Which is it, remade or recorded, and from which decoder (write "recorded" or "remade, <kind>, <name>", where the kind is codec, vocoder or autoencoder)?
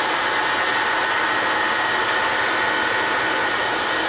recorded